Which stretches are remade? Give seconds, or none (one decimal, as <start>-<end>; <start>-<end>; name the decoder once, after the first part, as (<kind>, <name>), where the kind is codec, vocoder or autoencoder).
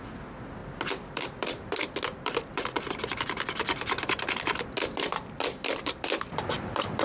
none